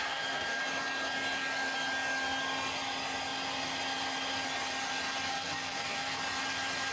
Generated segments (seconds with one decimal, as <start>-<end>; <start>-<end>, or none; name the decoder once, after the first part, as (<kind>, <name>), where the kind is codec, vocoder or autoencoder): 0.0-0.6 (codec, SNAC); 5.3-6.2